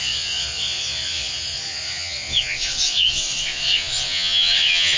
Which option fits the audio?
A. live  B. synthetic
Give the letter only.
B